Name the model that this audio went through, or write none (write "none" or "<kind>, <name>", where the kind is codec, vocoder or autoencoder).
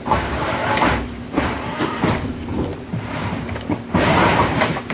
vocoder, BigVGAN v2